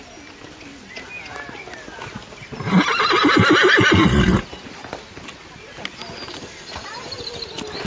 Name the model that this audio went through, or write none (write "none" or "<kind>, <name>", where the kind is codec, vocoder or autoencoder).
none